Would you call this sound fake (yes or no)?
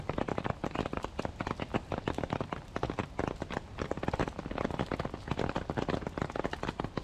no